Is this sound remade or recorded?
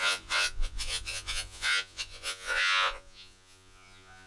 remade